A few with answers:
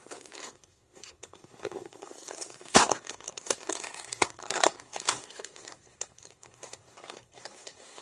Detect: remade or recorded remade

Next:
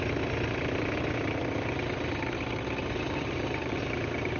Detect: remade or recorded recorded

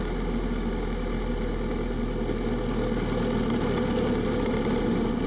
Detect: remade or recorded recorded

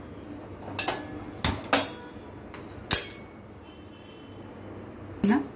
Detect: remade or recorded recorded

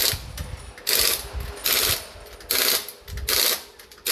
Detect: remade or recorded recorded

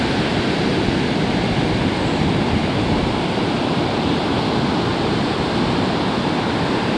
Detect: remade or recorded recorded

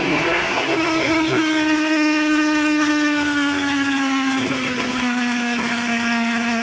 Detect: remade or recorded remade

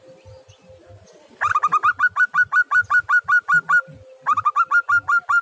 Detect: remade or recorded recorded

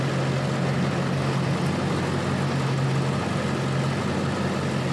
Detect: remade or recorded recorded